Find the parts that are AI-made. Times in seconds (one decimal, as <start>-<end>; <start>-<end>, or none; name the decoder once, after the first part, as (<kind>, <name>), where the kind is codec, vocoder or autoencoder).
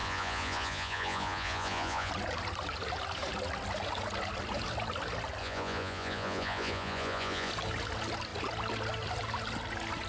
0.0-2.1 (vocoder, Vocos); 5.4-7.5